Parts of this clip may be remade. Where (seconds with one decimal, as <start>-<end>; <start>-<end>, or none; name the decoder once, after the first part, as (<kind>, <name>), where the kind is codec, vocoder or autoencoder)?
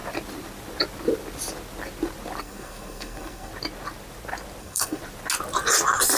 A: 2.4-3.5 (codec, SNAC); 4.6-5.0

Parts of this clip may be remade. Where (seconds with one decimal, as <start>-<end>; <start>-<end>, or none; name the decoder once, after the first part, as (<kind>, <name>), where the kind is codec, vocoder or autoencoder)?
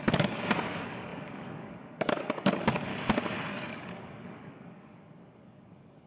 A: 0.0-2.9 (codec, DAC); 3.5-6.1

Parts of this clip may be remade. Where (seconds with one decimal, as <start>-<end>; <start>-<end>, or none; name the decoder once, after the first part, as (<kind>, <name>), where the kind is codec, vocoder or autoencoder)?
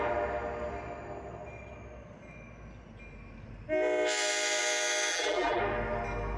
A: 5.1-5.6 (vocoder, BigVGAN v2)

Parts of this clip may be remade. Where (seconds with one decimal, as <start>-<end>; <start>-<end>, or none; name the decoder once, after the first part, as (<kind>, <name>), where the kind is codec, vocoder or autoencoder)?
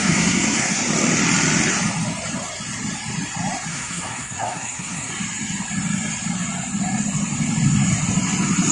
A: 0.0-0.8 (codec, SNAC); 3.7-5.1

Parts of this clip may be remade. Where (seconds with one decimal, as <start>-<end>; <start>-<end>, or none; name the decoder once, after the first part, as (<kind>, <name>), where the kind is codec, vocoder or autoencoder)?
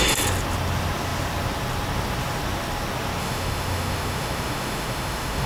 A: 3.2-5.5 (autoencoder, DAC-VAE)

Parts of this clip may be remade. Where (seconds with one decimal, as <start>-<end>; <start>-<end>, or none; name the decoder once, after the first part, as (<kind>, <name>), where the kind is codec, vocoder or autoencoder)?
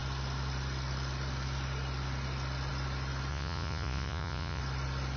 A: 3.3-4.6 (vocoder, Vocos)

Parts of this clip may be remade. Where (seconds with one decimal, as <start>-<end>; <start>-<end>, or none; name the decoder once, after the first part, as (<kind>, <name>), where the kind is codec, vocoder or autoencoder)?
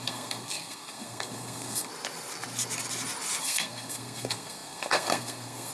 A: 0.0-1.9 (codec, SNAC); 3.4-5.7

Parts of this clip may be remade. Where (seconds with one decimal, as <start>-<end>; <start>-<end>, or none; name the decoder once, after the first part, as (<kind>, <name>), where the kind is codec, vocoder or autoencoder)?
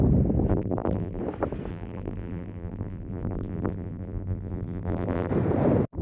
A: 0.5-1.2 (vocoder, BigVGAN v2); 1.7-5.3